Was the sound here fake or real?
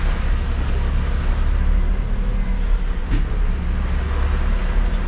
real